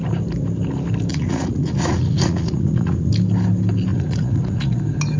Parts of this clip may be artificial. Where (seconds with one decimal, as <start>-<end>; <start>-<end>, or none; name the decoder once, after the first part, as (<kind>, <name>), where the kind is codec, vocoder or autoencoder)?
1.1-3.1 (vocoder, Vocos); 3.9-4.8